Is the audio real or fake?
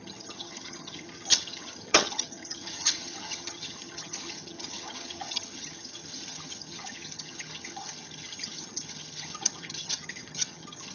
fake